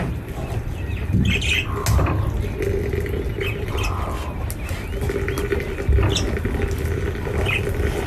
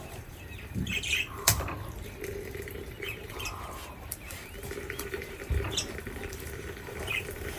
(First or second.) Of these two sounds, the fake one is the second